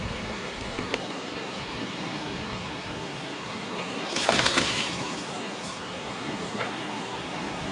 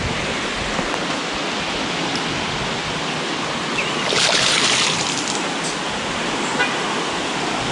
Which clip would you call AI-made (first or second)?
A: first